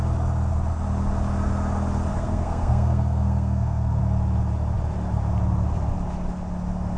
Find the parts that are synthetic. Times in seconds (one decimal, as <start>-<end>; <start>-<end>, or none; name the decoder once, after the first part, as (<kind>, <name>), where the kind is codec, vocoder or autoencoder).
2.1-4.0 (codec, SNAC)